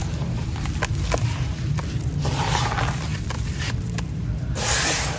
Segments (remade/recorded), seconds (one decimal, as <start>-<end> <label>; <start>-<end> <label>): 0.0-3.1 recorded; 3.1-4.7 remade; 4.7-5.2 recorded